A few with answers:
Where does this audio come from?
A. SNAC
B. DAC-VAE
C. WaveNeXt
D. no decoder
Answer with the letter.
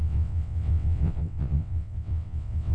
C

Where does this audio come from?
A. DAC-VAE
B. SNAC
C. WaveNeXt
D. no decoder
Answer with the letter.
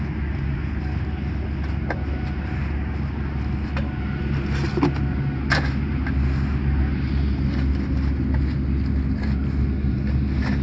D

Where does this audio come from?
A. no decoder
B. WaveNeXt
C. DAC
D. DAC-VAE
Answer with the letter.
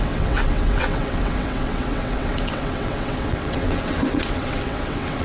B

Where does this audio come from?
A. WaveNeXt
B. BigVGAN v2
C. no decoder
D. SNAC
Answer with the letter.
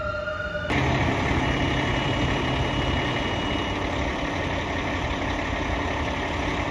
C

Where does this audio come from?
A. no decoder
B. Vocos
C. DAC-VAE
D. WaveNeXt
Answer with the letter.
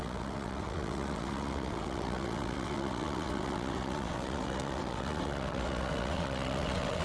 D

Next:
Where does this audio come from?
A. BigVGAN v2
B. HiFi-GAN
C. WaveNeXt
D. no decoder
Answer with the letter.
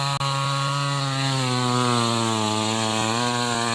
D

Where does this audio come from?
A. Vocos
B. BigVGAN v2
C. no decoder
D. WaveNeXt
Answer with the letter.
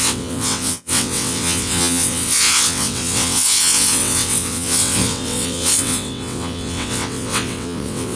D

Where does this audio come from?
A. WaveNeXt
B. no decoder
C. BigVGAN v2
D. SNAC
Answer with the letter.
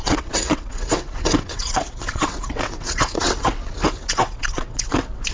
A